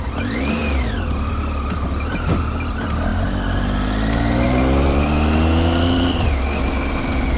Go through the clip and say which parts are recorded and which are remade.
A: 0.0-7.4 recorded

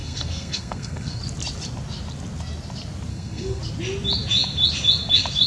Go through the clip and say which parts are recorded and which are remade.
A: 0.0-1.2 remade; 1.2-3.1 recorded; 3.1-3.6 remade; 3.6-5.5 recorded

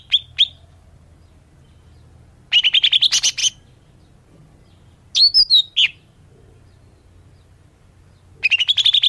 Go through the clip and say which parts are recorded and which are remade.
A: 0.0-9.1 recorded

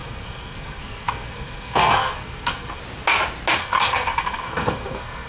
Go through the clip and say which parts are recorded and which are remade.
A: 0.0-2.8 remade; 2.8-3.6 recorded; 3.6-5.3 remade

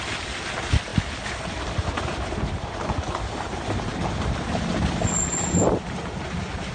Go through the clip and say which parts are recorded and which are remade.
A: 0.0-6.7 recorded